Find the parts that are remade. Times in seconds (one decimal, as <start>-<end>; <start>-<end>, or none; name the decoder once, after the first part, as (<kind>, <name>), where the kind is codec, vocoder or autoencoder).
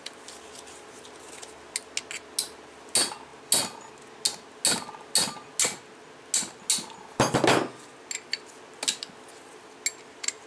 none